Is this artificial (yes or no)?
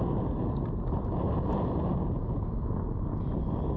no